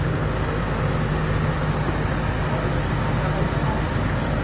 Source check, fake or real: real